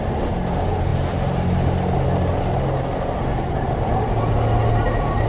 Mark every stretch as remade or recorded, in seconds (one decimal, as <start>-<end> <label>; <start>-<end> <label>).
0.0-5.3 recorded

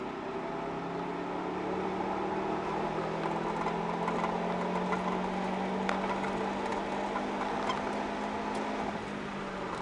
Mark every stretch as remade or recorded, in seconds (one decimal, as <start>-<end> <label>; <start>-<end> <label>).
0.0-9.8 recorded

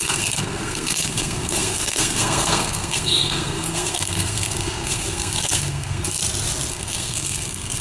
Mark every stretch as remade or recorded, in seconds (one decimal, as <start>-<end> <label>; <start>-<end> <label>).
0.0-6.2 remade; 6.2-6.7 recorded; 6.7-7.8 remade

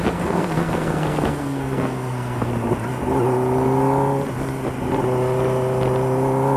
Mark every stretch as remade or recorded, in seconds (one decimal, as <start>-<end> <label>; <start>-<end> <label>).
0.0-2.5 remade; 2.5-6.6 recorded

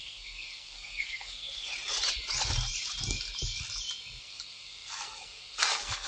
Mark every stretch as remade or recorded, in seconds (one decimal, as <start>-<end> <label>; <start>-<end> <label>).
0.0-1.7 remade; 1.7-4.2 recorded; 4.2-6.1 remade

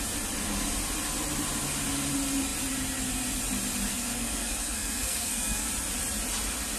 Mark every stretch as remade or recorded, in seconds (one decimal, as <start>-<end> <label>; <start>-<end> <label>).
0.0-3.9 recorded; 3.9-5.7 remade; 5.7-6.8 recorded